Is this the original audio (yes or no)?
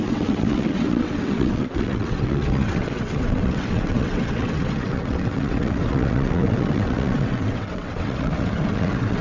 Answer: no